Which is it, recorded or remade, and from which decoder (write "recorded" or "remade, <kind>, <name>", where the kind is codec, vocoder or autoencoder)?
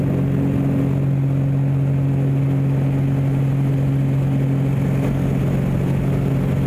recorded